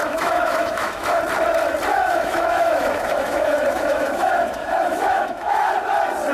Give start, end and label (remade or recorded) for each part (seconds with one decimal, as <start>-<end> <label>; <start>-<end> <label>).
0.0-1.2 remade; 1.2-1.9 recorded; 1.9-5.7 remade; 5.7-6.3 recorded